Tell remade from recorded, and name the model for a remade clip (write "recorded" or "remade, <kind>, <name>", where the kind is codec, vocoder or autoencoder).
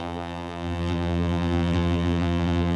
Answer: remade, vocoder, BigVGAN v2